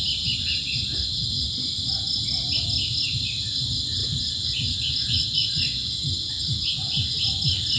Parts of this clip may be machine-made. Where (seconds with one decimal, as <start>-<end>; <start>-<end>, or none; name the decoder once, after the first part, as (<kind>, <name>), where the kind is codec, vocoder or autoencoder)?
4.0-6.3 (vocoder, Vocos)

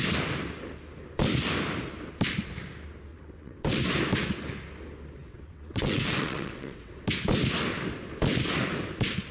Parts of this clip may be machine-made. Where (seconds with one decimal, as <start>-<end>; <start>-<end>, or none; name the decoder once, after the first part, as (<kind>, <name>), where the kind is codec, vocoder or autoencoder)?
3.1-3.8 (vocoder, WaveNeXt); 5.2-6.9

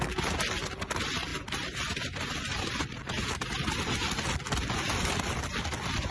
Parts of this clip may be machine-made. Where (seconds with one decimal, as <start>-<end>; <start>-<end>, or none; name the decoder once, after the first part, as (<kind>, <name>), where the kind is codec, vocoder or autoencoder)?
none

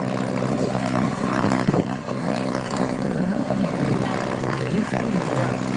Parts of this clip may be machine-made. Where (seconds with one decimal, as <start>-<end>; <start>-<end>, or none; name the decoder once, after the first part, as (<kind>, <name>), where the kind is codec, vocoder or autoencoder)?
0.5-3.7 (codec, SNAC); 4.4-5.0

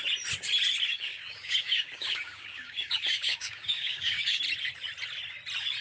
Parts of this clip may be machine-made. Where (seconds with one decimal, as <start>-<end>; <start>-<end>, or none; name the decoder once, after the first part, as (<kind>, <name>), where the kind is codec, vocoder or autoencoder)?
0.9-4.4 (codec, DAC)